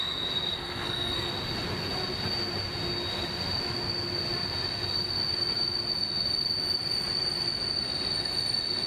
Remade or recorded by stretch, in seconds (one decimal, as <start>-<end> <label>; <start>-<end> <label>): 0.0-0.5 recorded; 0.5-1.3 remade; 1.3-8.9 recorded